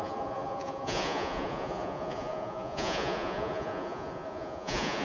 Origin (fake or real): fake